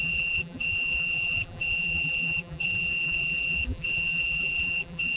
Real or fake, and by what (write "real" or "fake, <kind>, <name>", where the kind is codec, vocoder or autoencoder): fake, vocoder, BigVGAN v2